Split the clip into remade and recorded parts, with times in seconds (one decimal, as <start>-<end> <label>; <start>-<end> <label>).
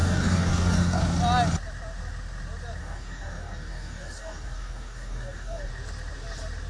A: 0.0-1.0 remade; 1.0-2.8 recorded; 2.8-5.7 remade; 5.7-6.7 recorded